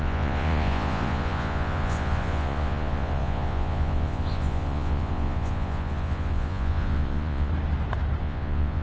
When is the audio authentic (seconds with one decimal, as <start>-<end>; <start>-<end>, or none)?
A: 7.5-8.2